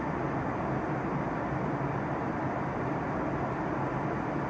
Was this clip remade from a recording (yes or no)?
no